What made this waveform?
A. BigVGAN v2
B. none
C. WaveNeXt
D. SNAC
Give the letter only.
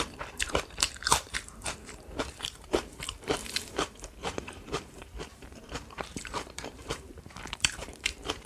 A